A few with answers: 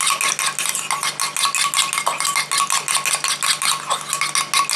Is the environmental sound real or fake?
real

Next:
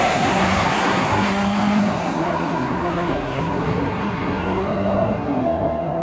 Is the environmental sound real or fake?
fake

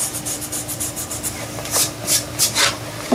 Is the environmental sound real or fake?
fake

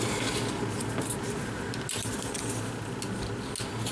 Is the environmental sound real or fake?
real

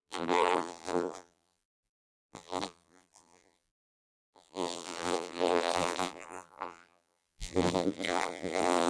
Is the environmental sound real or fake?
fake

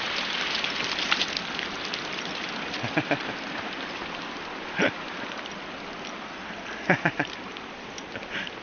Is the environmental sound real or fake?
real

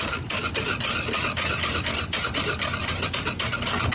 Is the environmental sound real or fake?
real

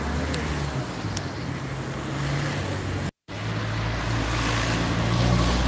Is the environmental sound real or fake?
real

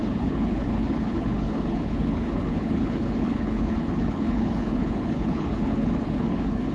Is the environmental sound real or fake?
fake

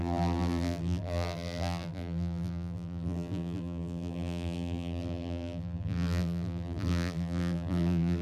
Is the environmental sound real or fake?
fake